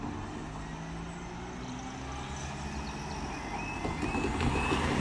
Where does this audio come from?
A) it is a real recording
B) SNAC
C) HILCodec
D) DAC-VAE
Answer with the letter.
A